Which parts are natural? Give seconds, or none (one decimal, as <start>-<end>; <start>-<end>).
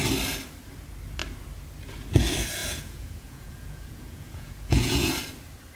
0.0-2.6; 5.1-5.8